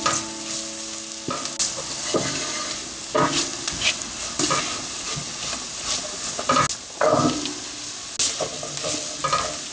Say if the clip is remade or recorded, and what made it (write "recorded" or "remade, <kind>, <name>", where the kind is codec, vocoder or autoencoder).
recorded